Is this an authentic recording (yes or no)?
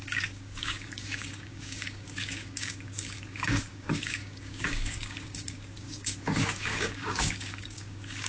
no